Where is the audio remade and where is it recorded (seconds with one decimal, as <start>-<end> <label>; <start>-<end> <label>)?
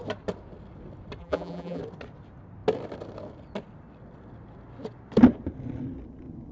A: 0.0-1.2 recorded; 1.2-1.8 remade; 1.8-6.5 recorded